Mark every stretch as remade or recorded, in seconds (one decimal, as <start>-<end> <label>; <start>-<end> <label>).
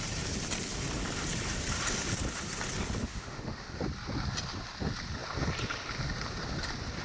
0.0-3.0 recorded; 3.0-3.8 remade; 3.8-7.0 recorded